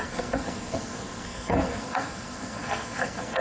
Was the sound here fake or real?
fake